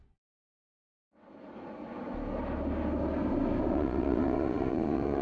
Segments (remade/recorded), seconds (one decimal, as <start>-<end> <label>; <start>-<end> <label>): 0.0-0.6 remade; 0.6-3.7 recorded; 3.7-5.2 remade